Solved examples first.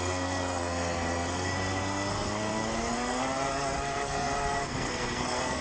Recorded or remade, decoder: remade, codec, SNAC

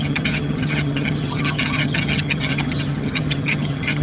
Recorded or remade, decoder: remade, vocoder, HiFi-GAN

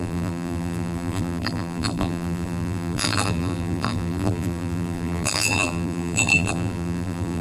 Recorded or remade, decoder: remade, vocoder, BigVGAN v2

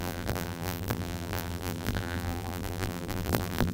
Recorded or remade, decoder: remade, vocoder, BigVGAN v2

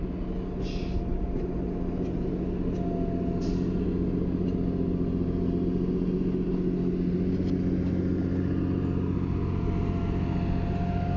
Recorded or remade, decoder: recorded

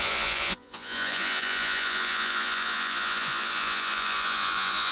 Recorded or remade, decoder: remade, vocoder, Vocos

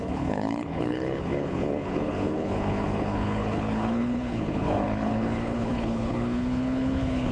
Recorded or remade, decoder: remade, codec, HILCodec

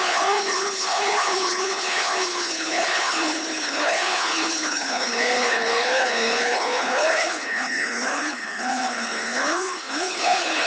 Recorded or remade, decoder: remade, codec, HILCodec